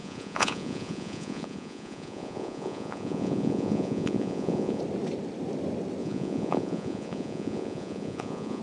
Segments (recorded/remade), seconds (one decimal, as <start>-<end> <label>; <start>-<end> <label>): 0.0-4.8 remade; 4.8-6.0 recorded; 6.0-8.6 remade